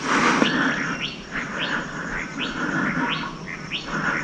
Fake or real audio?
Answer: real